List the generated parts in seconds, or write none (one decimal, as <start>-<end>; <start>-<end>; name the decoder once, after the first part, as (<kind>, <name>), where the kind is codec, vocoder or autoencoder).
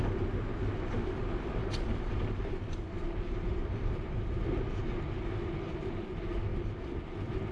1.6-4.3 (vocoder, BigVGAN v2)